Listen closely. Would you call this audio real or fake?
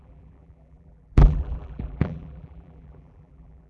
fake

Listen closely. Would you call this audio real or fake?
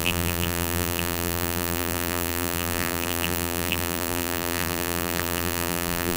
fake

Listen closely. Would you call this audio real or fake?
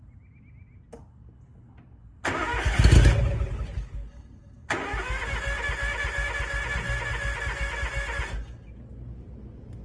real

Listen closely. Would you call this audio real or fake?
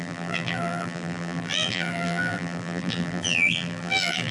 fake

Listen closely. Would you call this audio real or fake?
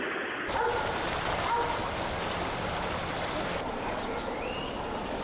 real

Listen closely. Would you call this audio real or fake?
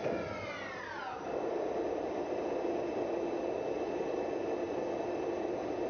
real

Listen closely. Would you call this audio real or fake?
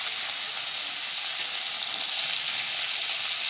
real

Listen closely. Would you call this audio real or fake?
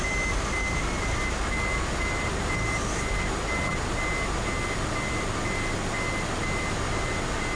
real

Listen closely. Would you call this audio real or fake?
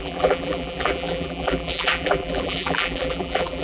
fake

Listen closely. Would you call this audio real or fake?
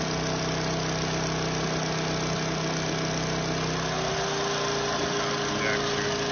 real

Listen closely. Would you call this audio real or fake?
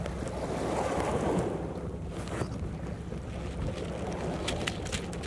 real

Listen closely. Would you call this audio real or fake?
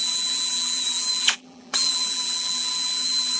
fake